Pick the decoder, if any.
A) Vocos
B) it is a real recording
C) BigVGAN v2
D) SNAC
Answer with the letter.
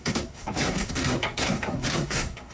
D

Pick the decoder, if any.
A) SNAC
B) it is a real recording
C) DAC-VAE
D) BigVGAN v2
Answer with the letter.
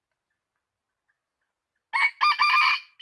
B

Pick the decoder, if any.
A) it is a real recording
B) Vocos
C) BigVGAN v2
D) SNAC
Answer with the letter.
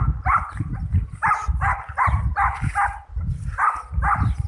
A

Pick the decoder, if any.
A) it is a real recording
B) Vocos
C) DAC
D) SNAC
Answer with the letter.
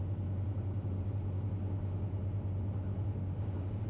A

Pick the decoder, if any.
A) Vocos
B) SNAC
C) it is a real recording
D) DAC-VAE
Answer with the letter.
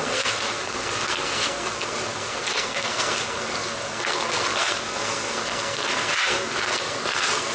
B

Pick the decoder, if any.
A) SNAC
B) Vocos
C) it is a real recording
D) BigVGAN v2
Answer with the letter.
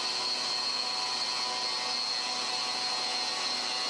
C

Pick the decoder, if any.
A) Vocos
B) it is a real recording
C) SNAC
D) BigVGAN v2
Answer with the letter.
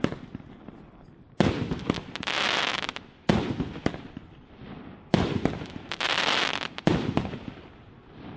B